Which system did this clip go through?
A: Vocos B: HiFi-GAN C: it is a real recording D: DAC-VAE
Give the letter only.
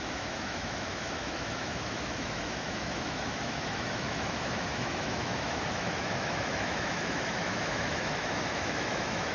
D